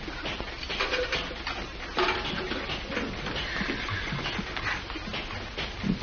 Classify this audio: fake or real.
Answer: real